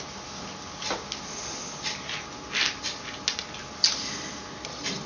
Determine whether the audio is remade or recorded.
recorded